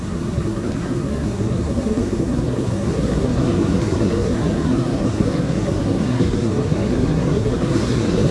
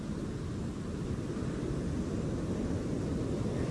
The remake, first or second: first